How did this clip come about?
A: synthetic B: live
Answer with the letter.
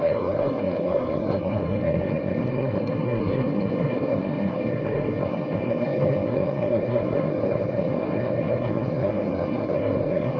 A